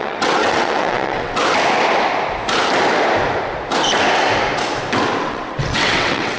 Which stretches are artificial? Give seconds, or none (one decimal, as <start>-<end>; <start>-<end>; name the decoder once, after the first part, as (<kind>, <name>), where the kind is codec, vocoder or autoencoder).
0.0-1.4 (vocoder, WaveNeXt); 5.2-6.4